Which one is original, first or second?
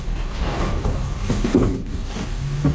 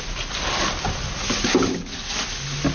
second